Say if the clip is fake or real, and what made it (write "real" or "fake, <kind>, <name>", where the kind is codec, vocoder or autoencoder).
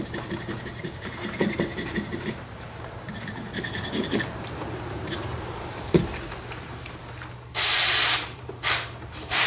fake, vocoder, BigVGAN v2